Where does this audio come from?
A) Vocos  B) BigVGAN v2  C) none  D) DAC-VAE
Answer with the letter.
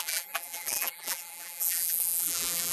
B